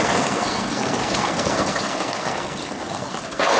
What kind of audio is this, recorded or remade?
remade